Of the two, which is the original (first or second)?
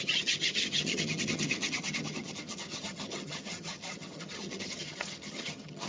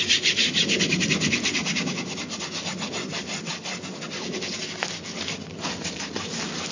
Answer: second